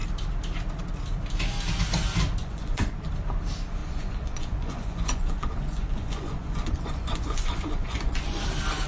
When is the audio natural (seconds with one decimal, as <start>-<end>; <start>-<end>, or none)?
0.0-2.4; 3.1-3.8; 8.4-8.9